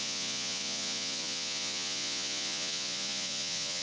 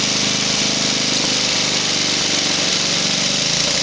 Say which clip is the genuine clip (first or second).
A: second